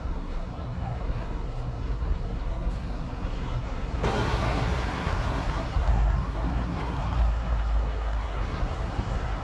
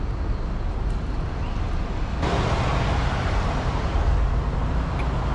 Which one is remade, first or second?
first